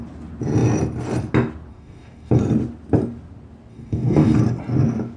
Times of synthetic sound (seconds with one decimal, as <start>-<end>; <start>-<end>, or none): 1.7-2.4; 3.7-4.4